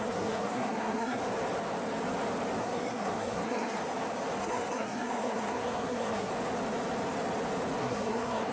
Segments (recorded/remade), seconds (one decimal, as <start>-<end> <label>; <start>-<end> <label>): 0.0-1.2 remade; 1.2-2.6 recorded; 2.6-3.8 remade; 3.8-4.4 recorded; 4.4-6.3 remade; 6.3-7.8 recorded; 7.8-8.5 remade